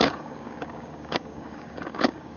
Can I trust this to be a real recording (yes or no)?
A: no